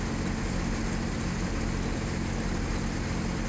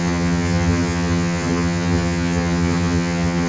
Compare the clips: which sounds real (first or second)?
first